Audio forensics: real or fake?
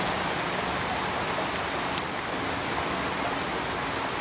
real